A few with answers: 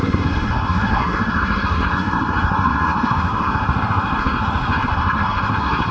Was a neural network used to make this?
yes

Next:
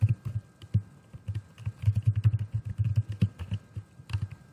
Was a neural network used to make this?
no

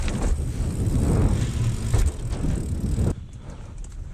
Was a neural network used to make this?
no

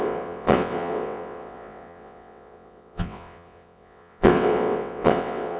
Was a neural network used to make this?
yes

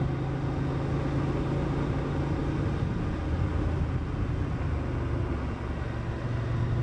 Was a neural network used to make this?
no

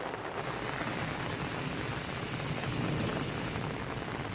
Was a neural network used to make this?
no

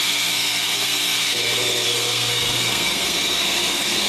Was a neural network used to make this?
yes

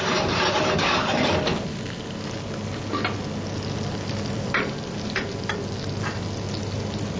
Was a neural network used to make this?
no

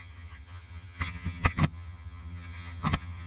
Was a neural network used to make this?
yes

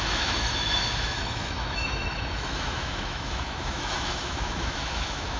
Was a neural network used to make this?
yes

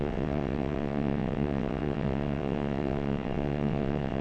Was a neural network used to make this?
yes